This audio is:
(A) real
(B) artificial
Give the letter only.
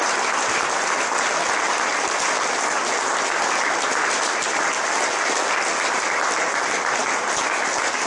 A